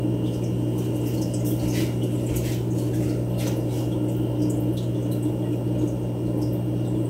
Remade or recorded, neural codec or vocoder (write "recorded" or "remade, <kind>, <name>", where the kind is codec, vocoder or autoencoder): recorded